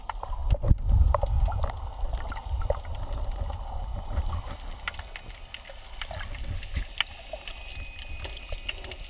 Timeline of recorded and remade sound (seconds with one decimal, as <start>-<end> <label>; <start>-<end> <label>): 0.0-9.1 recorded